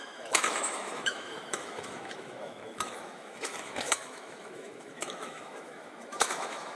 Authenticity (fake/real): fake